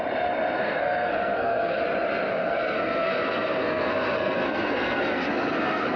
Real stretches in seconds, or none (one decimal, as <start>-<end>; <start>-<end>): 0.0-0.6; 1.8-2.3